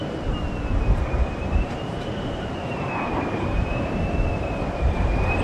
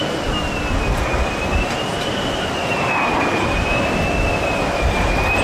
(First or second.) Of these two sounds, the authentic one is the second